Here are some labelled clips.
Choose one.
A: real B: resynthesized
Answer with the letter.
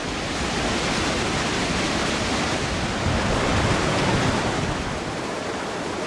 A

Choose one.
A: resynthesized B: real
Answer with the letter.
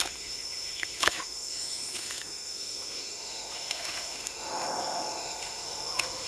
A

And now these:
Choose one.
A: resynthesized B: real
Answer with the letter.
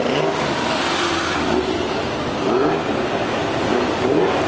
B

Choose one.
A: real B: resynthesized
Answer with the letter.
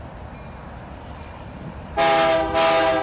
A